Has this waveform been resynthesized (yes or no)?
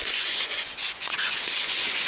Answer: yes